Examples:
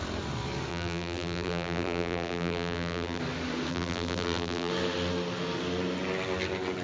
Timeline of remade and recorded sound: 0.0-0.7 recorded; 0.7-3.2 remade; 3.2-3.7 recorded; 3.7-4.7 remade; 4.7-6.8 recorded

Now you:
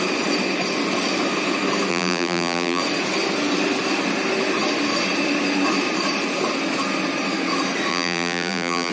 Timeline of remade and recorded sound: 0.0-1.9 recorded; 1.9-2.8 remade; 2.8-7.9 recorded; 7.9-8.9 remade

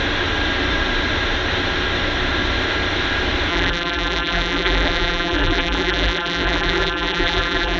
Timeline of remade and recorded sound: 0.0-3.5 recorded; 3.5-7.8 remade

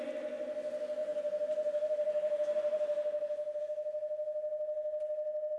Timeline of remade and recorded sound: 0.0-1.0 recorded; 1.0-3.6 remade; 3.6-5.6 recorded

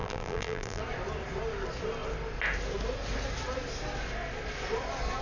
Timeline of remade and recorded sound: 0.0-0.8 remade; 0.8-5.2 recorded

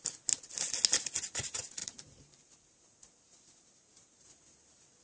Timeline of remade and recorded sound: 0.0-1.8 recorded; 1.8-4.3 remade; 4.3-5.0 recorded

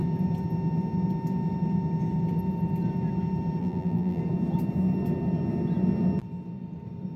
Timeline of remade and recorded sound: 0.0-3.6 recorded; 3.6-4.2 remade; 4.2-7.2 recorded

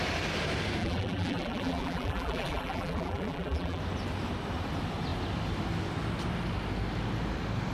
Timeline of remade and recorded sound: 0.0-0.8 recorded; 0.8-3.8 remade; 3.8-7.7 recorded